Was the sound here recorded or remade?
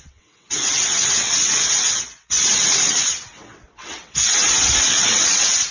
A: remade